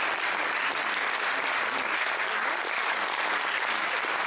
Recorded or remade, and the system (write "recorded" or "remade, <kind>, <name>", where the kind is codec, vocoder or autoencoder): recorded